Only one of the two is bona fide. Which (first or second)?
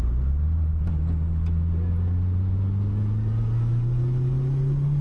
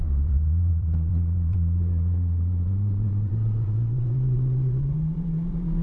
first